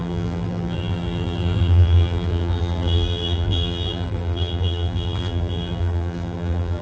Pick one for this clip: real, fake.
fake